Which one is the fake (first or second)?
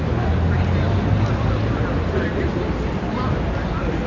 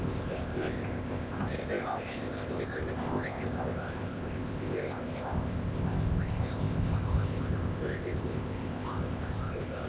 second